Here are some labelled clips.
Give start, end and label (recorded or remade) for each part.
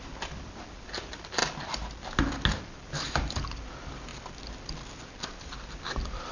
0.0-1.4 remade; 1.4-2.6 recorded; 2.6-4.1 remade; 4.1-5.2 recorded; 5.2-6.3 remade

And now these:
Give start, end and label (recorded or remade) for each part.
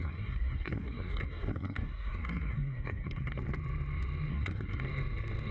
0.0-3.3 remade; 3.3-4.3 recorded; 4.3-4.8 remade; 4.8-5.5 recorded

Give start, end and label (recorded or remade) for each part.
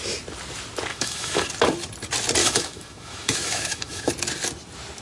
0.0-0.9 recorded; 0.9-1.5 remade; 1.5-2.4 recorded; 2.4-4.1 remade; 4.1-5.0 recorded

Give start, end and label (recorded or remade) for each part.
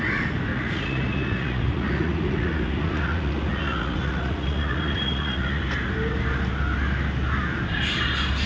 0.0-0.5 recorded; 0.5-5.6 remade; 5.6-8.5 recorded